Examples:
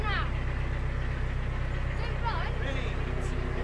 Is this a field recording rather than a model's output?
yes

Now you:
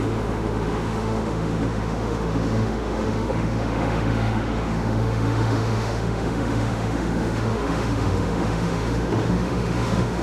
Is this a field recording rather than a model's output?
no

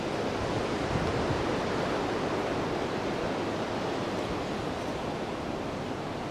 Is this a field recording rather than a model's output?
yes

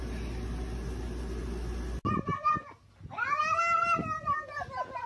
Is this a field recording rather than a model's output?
yes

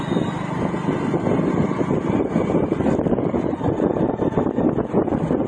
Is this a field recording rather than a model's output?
yes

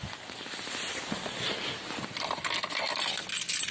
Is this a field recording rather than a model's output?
yes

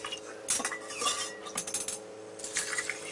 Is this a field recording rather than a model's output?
yes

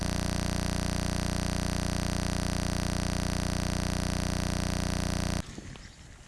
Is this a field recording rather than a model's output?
yes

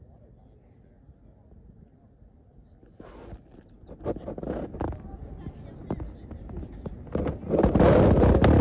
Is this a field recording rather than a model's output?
yes